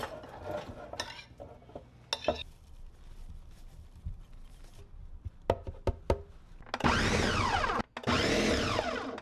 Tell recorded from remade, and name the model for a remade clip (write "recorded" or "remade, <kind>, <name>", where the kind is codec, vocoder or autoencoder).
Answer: recorded